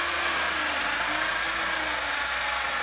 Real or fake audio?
real